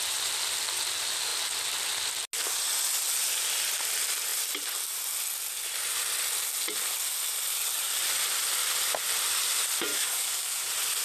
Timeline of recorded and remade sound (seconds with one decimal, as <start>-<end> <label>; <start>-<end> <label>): 0.0-9.9 recorded; 9.9-10.6 remade; 10.6-11.0 recorded